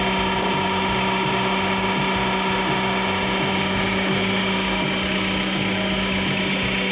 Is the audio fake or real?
real